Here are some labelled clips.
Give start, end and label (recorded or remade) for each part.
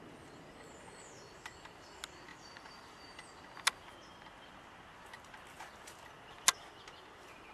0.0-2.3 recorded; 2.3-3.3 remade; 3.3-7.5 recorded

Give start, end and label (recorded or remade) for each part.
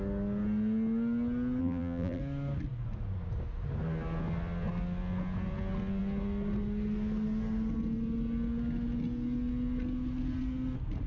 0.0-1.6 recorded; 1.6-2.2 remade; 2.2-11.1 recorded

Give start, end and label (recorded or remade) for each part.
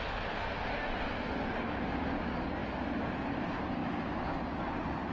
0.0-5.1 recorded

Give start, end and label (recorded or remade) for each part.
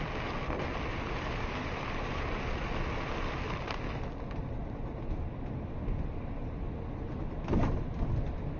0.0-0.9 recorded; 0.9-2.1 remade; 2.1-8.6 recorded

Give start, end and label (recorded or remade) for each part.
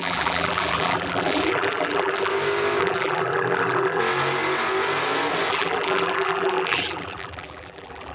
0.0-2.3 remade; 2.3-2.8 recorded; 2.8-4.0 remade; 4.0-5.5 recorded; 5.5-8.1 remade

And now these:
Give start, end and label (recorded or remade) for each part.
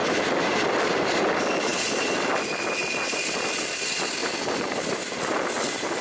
0.0-6.0 recorded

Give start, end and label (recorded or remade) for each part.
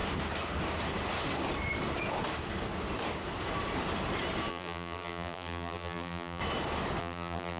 0.0-4.5 recorded; 4.5-6.4 remade; 6.4-7.0 recorded; 7.0-7.6 remade